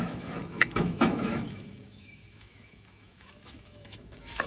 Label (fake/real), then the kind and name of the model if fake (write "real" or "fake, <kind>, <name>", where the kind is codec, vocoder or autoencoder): fake, autoencoder, DAC-VAE